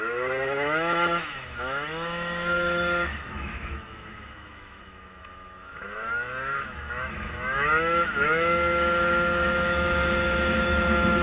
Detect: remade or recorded remade